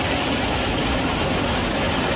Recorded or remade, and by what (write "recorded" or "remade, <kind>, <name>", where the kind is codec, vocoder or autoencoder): recorded